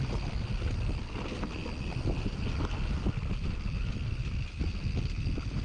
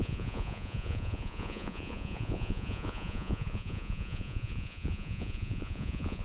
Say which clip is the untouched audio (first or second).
first